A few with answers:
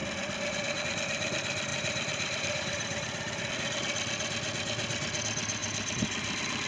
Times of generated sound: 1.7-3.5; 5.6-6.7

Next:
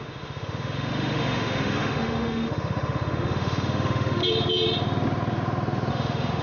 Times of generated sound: 0.0-4.2; 5.9-6.4

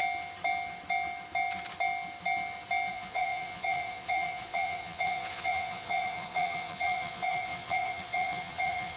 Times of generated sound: 2.9-9.0

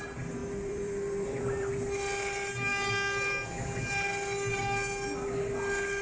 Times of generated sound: 0.4-1.7

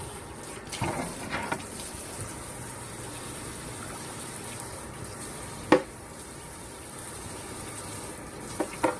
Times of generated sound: 2.4-9.0